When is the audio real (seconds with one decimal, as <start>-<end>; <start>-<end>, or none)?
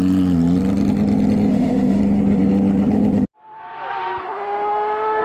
0.0-1.5; 2.0-4.2